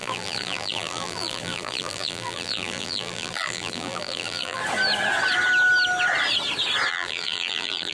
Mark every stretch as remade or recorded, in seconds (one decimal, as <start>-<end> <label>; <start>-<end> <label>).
0.0-4.6 remade; 4.6-6.9 recorded; 6.9-7.9 remade